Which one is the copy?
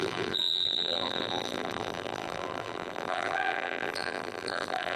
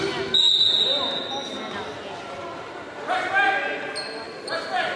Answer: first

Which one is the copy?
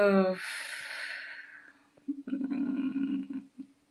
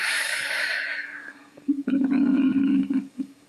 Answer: second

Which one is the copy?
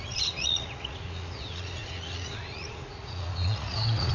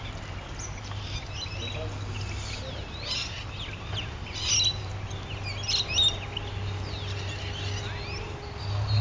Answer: first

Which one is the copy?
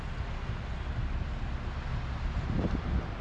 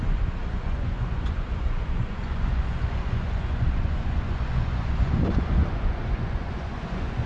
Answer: second